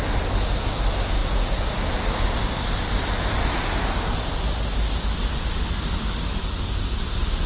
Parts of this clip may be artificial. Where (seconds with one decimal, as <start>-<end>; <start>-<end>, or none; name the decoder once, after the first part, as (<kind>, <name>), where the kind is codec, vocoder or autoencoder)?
1.2-1.8 (vocoder, Vocos); 6.4-7.0